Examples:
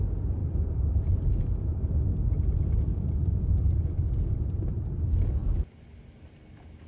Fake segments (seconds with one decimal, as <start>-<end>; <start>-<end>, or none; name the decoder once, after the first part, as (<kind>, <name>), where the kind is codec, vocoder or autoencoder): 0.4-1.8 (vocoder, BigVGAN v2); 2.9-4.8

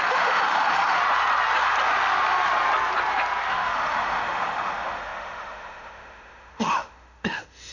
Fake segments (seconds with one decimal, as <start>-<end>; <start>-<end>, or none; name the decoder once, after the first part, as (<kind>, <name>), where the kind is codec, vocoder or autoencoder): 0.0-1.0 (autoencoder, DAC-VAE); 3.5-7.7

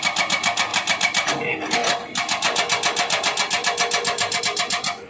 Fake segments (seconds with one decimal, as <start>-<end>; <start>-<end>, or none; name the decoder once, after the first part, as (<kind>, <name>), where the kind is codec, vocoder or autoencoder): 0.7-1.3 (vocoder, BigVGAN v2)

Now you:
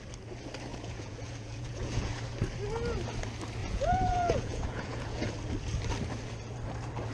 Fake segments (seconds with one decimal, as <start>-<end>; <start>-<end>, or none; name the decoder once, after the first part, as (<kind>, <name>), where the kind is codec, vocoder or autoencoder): 0.7-2.1 (vocoder, Vocos); 3.6-5.3